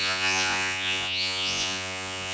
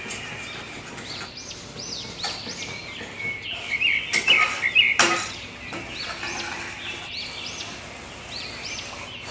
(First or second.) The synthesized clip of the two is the first